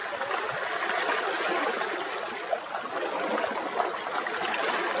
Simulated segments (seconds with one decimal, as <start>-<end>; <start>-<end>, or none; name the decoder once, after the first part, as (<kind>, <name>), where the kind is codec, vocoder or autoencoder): none